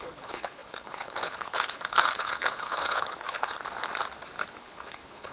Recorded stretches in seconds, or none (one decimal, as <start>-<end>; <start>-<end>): 3.6-4.6